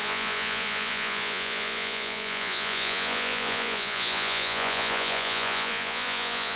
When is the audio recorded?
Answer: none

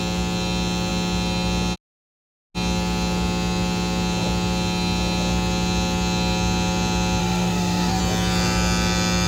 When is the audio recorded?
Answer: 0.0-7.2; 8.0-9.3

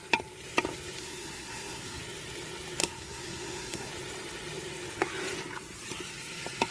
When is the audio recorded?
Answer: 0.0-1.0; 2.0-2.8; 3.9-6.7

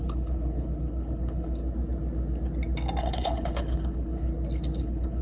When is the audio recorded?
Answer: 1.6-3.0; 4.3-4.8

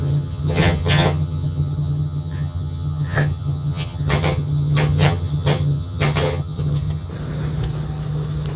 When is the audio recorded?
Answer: 7.1-8.6

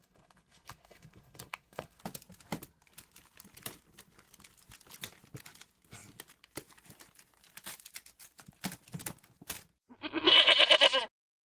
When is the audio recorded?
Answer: 2.0-11.5

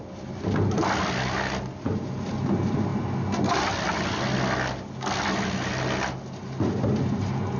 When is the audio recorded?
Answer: 0.0-7.6